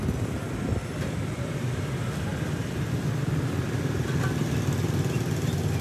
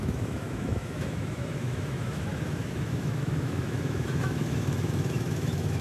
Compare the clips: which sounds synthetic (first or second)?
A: second